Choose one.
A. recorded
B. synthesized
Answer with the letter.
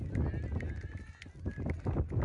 A